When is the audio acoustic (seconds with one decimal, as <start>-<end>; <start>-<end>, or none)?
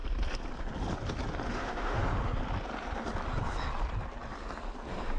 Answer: 0.0-1.5; 2.0-5.2